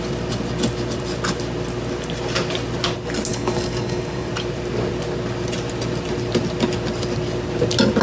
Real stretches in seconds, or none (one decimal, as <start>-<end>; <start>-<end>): 0.0-3.3; 4.3-8.0